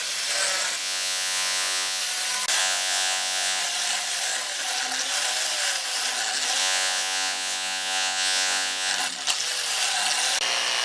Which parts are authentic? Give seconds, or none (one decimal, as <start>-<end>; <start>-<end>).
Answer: 0.0-0.8; 2.0-2.6; 3.6-6.6; 8.9-10.8